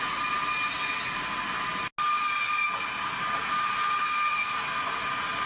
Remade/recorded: recorded